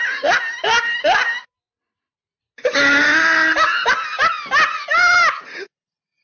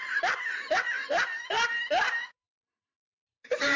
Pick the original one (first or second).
first